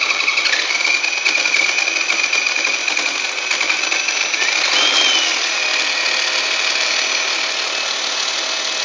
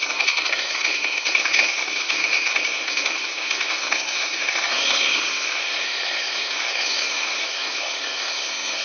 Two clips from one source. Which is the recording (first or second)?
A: first